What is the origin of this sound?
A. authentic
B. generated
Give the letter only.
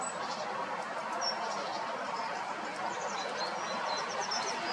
A